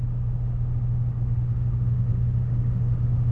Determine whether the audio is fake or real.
fake